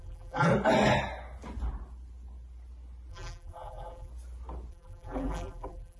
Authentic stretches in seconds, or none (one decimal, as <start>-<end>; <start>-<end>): 0.5-3.1; 4.1-4.7